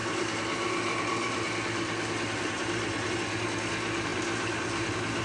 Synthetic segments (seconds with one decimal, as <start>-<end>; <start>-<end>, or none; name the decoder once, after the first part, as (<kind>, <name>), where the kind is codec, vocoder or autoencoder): 0.0-3.1 (vocoder, BigVGAN v2)